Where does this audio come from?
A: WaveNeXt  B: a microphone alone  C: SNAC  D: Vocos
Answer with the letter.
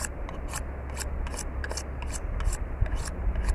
B